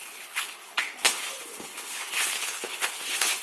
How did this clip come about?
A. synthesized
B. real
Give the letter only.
A